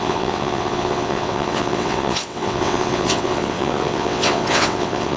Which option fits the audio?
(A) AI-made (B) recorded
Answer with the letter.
A